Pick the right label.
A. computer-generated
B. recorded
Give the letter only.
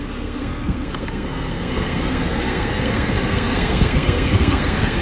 A